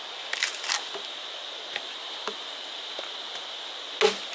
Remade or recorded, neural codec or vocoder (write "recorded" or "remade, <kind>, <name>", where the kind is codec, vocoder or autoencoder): recorded